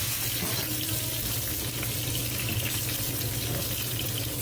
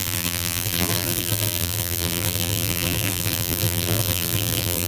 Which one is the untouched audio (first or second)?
first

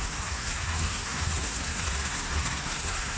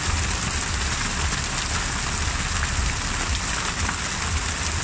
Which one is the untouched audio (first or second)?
second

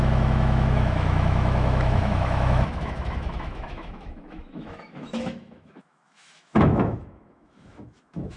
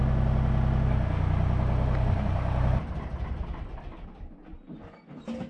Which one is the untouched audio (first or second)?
second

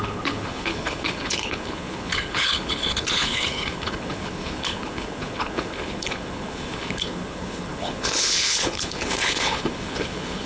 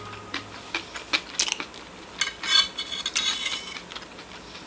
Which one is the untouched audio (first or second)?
second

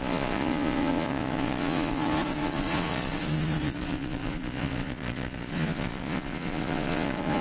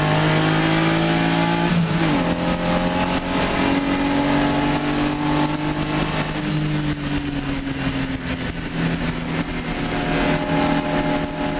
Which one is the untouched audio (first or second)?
second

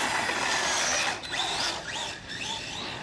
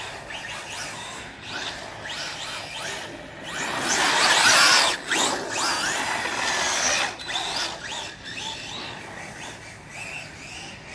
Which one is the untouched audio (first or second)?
second